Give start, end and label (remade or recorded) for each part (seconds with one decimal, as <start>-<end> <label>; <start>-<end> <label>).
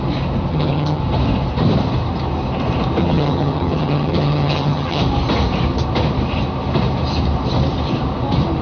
0.0-0.5 recorded; 0.5-1.0 remade; 1.0-3.0 recorded; 3.0-5.0 remade; 5.0-8.6 recorded